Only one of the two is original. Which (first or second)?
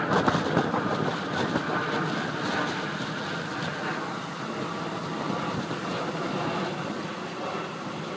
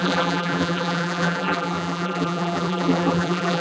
first